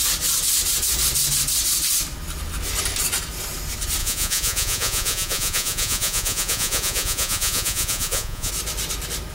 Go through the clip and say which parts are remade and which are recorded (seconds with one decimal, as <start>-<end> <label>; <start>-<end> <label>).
0.0-4.0 recorded; 4.0-8.5 remade; 8.5-9.3 recorded